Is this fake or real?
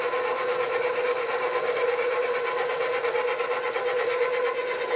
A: real